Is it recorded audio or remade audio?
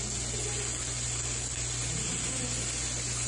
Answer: recorded